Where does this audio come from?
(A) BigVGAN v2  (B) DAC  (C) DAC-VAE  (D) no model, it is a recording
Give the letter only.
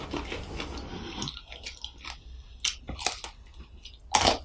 D